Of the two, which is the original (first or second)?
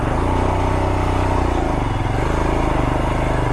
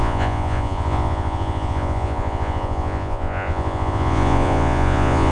first